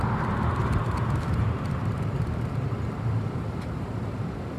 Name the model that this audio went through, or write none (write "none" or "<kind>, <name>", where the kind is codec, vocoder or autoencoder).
vocoder, BigVGAN v2